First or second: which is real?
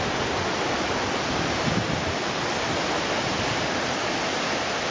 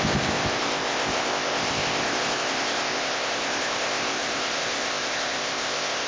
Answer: first